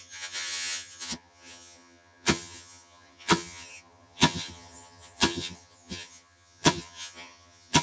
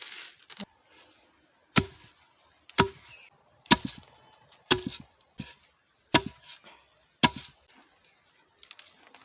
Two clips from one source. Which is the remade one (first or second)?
first